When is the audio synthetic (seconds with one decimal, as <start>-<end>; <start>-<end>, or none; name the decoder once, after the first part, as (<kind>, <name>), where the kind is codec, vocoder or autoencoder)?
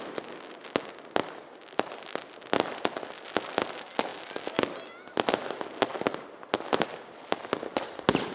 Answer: none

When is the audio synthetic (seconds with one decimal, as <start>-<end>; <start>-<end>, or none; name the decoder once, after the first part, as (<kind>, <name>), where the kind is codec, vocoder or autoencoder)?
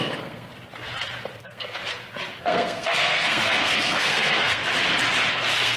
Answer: 0.0-0.5 (codec, SNAC); 1.4-1.8; 2.4-4.6; 5.3-5.8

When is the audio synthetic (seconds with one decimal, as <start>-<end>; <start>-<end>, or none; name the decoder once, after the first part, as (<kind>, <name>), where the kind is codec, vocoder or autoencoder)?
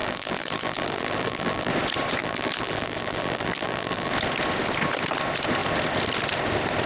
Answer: 0.0-1.7 (vocoder, BigVGAN v2); 2.2-4.1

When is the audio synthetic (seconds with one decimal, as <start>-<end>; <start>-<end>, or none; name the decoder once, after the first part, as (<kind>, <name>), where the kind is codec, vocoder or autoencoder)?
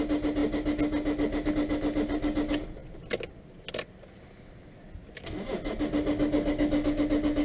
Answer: none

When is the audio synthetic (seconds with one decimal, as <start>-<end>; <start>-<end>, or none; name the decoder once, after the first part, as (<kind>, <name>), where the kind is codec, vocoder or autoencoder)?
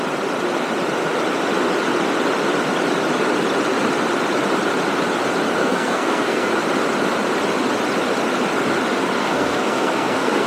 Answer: 5.6-6.5 (codec, SNAC); 9.2-10.5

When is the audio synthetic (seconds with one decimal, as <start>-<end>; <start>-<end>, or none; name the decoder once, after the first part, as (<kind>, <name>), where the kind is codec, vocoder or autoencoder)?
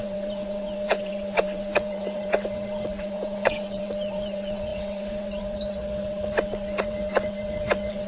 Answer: 0.0-8.1 (vocoder, WaveNeXt)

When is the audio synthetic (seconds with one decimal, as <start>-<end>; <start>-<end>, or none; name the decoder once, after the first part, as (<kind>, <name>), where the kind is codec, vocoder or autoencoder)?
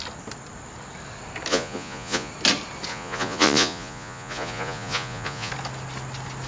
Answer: 1.5-2.3 (vocoder, Vocos); 2.9-5.5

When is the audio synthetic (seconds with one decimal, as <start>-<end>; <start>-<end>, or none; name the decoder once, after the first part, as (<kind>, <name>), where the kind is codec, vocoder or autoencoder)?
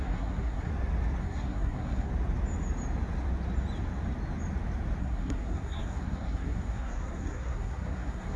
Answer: 0.0-0.7 (codec, SNAC); 1.2-2.1; 5.0-8.4